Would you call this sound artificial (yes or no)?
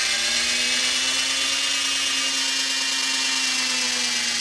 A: no